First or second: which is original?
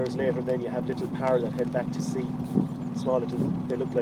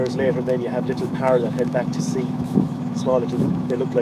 first